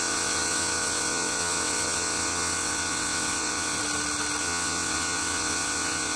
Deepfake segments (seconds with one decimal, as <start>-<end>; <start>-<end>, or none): 0.0-3.8; 4.4-6.2

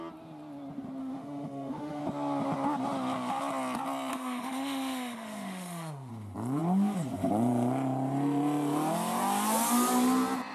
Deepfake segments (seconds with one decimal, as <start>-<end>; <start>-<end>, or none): 1.0-2.0; 4.1-6.1

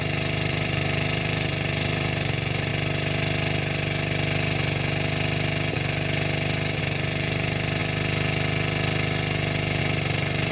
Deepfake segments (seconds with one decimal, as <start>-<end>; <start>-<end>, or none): 0.0-2.7; 6.8-7.8; 9.8-10.5

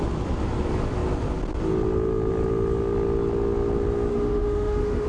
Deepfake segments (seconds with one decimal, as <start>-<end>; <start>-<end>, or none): 4.1-5.1

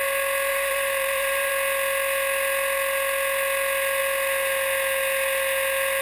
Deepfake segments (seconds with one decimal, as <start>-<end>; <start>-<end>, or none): 0.5-1.5

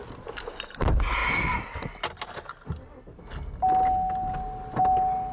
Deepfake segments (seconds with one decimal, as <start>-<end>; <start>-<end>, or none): none